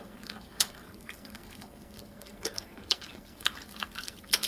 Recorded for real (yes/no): no